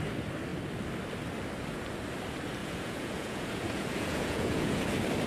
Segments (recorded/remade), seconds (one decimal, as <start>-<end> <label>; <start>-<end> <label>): 0.0-2.6 recorded; 2.6-4.8 remade; 4.8-5.3 recorded